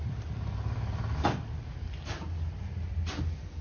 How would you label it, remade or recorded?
recorded